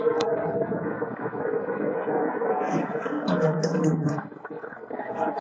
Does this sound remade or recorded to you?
remade